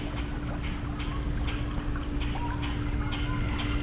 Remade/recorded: recorded